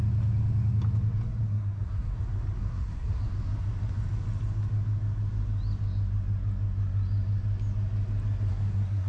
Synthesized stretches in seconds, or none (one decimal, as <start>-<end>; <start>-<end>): 1.4-2.2; 2.6-3.2; 8.5-9.1